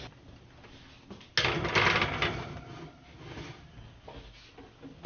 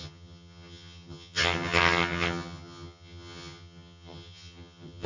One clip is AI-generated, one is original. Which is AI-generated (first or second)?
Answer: second